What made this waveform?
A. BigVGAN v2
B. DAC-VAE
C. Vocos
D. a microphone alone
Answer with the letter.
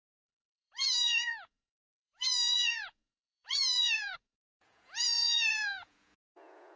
C